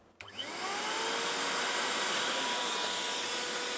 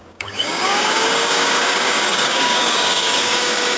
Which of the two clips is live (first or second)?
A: first